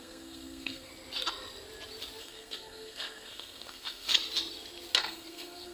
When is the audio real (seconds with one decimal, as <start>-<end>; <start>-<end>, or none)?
0.9-2.2; 4.1-5.0